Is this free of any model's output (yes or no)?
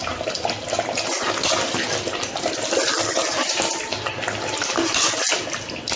yes